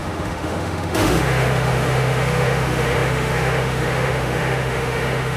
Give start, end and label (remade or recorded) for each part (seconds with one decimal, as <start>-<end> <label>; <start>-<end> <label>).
0.0-5.4 remade